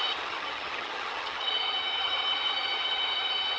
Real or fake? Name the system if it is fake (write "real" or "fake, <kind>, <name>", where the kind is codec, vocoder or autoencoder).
fake, vocoder, HiFi-GAN